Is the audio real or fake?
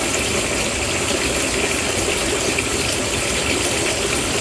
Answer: fake